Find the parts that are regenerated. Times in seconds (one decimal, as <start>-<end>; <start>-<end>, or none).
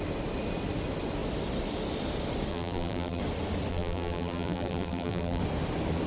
2.5-3.2; 3.7-5.4